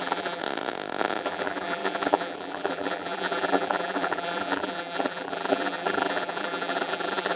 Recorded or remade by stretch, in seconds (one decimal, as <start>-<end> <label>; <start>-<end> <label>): 0.0-0.4 remade; 0.4-1.2 recorded; 1.2-7.4 remade